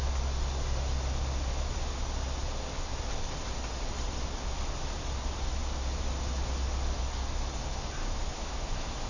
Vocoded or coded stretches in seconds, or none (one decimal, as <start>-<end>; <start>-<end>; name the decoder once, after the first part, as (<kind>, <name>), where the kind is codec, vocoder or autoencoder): 8.0-9.1 (autoencoder, DAC-VAE)